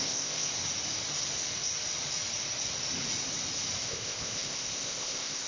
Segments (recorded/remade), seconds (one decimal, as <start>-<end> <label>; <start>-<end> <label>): 0.0-0.5 remade; 0.5-3.8 recorded; 3.8-5.5 remade